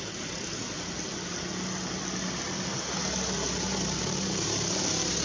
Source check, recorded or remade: recorded